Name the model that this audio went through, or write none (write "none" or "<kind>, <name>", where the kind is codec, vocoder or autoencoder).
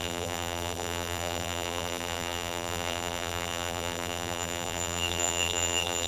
vocoder, BigVGAN v2